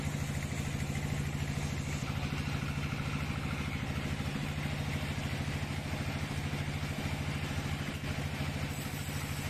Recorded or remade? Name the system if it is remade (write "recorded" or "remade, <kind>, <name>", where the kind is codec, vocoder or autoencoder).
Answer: recorded